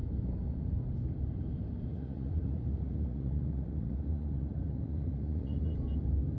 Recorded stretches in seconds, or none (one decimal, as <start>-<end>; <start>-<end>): 0.0-1.9; 5.7-6.4